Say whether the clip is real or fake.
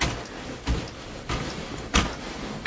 real